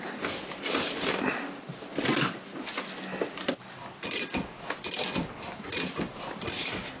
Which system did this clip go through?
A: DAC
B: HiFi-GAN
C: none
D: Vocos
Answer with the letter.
C